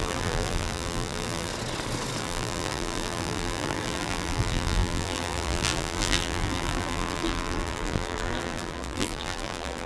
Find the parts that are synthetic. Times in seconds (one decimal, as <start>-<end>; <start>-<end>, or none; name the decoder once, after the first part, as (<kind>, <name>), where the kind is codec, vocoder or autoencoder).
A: 0.0-1.5 (vocoder, BigVGAN v2); 2.2-9.9